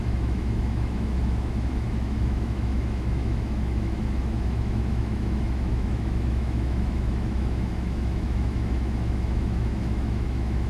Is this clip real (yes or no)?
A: no